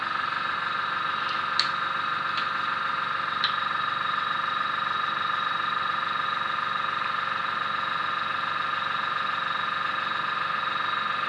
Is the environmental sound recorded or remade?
recorded